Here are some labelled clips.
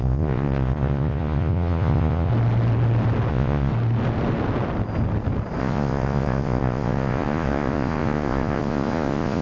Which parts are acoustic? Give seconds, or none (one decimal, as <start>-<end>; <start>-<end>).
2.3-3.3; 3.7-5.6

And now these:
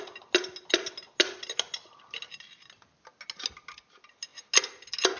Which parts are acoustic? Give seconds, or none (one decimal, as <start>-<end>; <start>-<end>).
0.0-5.2

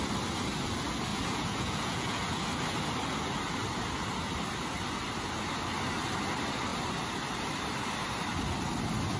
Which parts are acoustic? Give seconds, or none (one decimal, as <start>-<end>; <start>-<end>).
0.0-1.1; 2.4-9.2

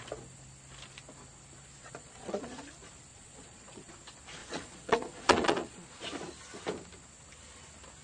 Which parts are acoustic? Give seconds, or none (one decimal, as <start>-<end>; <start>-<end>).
0.0-1.8; 2.7-3.1; 3.9-4.4; 6.0-8.0